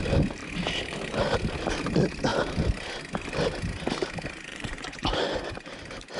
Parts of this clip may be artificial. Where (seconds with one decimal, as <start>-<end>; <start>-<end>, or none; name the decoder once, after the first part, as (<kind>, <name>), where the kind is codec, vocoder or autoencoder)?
4.5-5.7 (vocoder, Vocos)